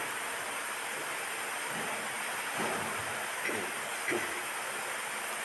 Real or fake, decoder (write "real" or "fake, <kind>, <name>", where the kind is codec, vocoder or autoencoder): real